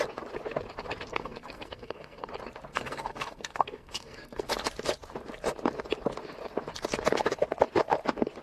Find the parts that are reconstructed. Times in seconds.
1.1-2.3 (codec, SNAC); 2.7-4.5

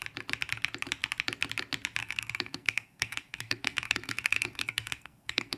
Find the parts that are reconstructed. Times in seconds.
2.0-5.6 (codec, SNAC)

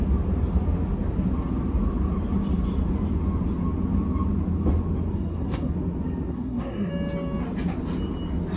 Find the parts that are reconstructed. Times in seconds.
5.1-5.7 (codec, SNAC); 6.3-6.9

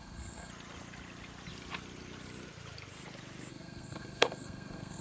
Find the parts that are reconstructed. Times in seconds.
0.0-0.5 (codec, SNAC); 3.5-5.0